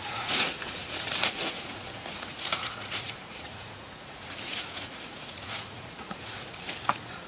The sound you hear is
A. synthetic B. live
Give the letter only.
A